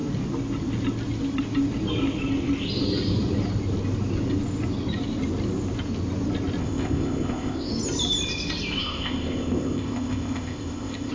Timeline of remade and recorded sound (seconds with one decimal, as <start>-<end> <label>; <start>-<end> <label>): 0.0-6.6 recorded; 6.6-7.7 remade; 7.7-8.8 recorded; 8.8-11.1 remade